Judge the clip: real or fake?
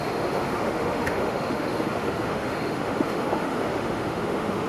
fake